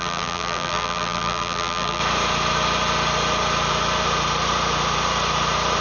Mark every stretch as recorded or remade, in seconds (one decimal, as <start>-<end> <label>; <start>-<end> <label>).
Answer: 0.0-2.0 remade; 2.0-5.8 recorded

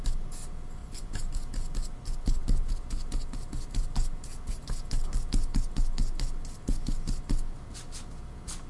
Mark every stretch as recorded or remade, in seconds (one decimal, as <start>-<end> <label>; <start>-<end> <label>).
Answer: 0.0-0.8 recorded; 0.8-1.3 remade; 1.3-8.7 recorded

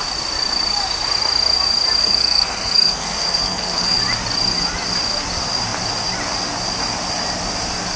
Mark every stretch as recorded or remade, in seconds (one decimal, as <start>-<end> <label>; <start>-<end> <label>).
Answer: 0.0-2.0 recorded; 2.0-4.0 remade; 4.0-8.0 recorded